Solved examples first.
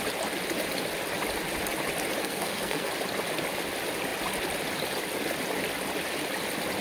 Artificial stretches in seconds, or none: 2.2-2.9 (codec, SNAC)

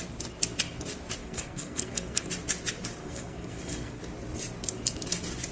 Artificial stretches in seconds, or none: 1.2-2.3 (codec, SNAC); 3.0-4.0

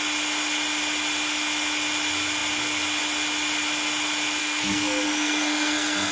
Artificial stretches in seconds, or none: 4.4-6.1 (codec, SNAC)

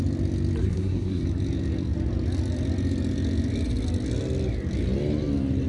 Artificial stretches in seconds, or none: 0.6-1.2 (codec, SNAC)

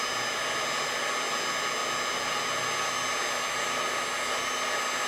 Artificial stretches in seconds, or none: none

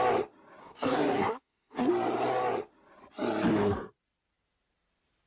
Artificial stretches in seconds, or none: 0.6-1.9 (codec, SNAC)